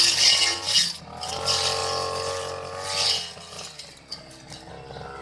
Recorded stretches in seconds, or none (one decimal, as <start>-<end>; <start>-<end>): 0.0-5.2